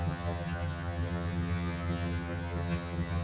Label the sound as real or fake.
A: fake